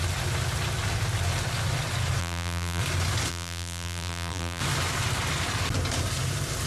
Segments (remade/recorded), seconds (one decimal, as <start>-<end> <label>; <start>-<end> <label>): 0.0-2.2 recorded; 2.2-2.8 remade; 2.8-3.3 recorded; 3.3-4.6 remade; 4.6-6.7 recorded